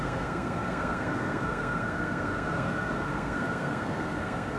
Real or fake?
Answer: fake